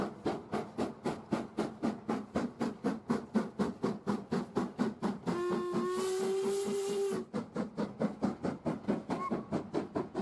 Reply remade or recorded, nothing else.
recorded